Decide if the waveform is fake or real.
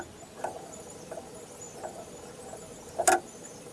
real